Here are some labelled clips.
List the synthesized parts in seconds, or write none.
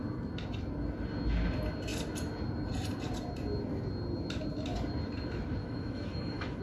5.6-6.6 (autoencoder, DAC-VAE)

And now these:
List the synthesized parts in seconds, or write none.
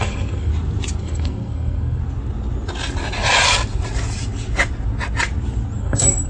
0.0-0.5 (codec, SNAC); 1.0-2.0; 5.8-6.3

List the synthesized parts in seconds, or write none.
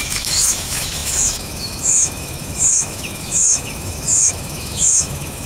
0.0-5.5 (autoencoder, DAC-VAE)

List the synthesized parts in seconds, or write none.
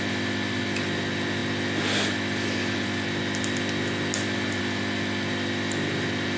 none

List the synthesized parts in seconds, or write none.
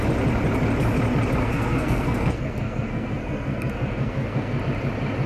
1.4-4.6 (codec, SNAC)